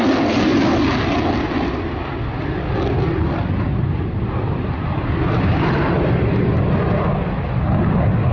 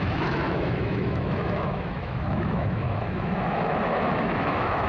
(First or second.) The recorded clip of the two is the first